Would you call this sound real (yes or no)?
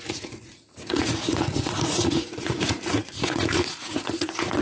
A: no